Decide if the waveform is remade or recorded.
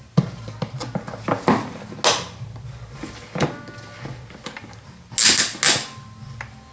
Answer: recorded